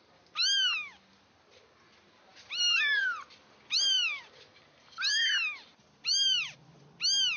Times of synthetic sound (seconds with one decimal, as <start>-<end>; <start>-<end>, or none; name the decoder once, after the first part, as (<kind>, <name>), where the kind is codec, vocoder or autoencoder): 2.3-5.3 (vocoder, BigVGAN v2); 5.7-6.8